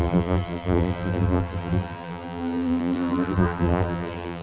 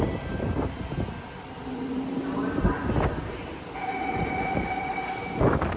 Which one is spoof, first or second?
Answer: first